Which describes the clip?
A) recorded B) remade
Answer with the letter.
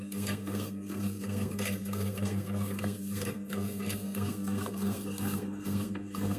B